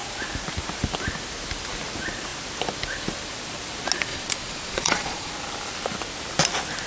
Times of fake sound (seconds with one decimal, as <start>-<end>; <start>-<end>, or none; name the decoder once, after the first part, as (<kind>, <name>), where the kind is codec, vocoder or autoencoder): 4.1-5.3 (vocoder, Vocos)